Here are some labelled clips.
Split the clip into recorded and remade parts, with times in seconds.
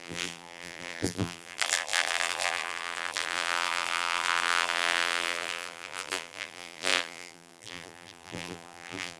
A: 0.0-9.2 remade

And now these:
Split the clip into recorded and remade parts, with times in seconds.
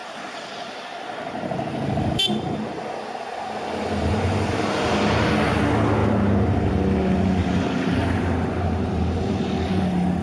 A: 0.0-5.0 remade; 5.0-6.0 recorded; 6.0-6.7 remade; 6.7-7.4 recorded; 7.4-9.7 remade; 9.7-10.2 recorded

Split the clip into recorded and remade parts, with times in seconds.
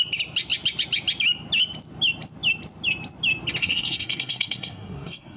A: 0.0-3.6 recorded; 3.6-5.4 remade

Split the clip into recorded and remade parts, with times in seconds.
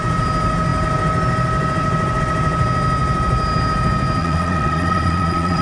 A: 0.0-4.2 recorded; 4.2-5.6 remade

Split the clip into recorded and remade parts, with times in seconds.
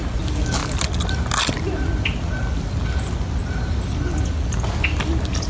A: 0.0-5.5 recorded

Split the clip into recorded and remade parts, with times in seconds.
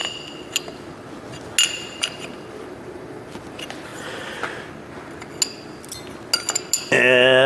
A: 0.0-1.7 recorded; 1.7-3.9 remade; 3.9-7.5 recorded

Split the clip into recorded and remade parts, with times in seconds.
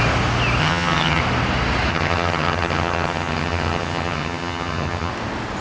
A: 0.0-0.6 recorded; 0.6-1.2 remade; 1.2-1.9 recorded; 1.9-5.1 remade; 5.1-5.6 recorded